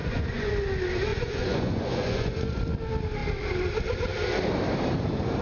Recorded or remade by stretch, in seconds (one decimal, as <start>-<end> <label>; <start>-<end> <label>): 0.0-0.5 remade; 0.5-1.1 recorded; 1.1-2.6 remade; 2.6-5.4 recorded

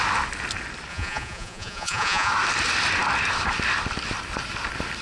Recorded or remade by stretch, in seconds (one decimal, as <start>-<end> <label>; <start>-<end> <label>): 0.0-0.9 recorded; 0.9-2.3 remade; 2.3-5.0 recorded

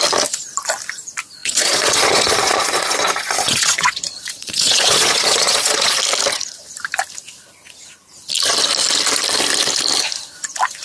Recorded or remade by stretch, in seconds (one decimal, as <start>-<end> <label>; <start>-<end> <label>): 0.0-1.4 recorded; 1.4-6.0 remade; 6.0-10.8 recorded

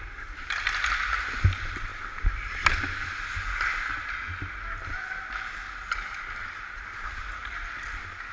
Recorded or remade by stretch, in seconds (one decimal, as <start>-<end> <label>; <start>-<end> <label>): 0.0-8.3 recorded

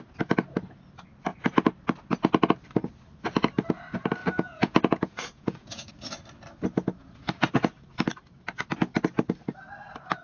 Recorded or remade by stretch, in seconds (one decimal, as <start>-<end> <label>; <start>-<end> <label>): 0.0-4.2 recorded; 4.2-5.9 remade; 5.9-7.0 recorded; 7.0-7.6 remade; 7.6-10.2 recorded

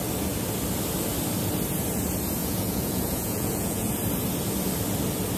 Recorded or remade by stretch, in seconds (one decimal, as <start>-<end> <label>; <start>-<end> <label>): 0.0-2.4 recorded; 2.4-3.9 remade; 3.9-5.4 recorded